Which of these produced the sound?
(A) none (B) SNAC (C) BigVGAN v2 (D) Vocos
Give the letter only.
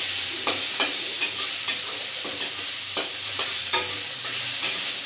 C